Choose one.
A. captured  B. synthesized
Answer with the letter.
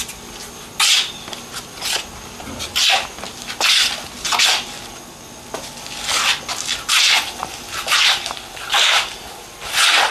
A